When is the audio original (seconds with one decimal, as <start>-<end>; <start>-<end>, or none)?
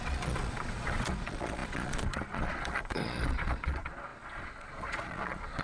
none